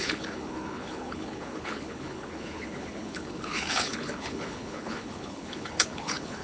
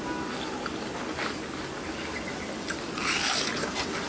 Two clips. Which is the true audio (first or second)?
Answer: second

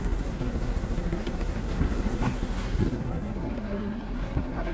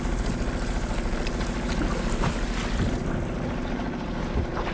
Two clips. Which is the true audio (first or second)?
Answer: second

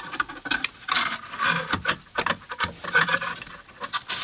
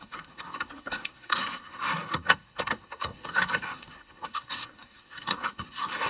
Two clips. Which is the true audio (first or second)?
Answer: first